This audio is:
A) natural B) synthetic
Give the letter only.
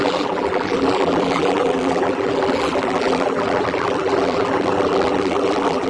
B